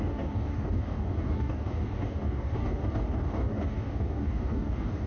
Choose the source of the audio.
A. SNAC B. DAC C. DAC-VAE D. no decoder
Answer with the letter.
B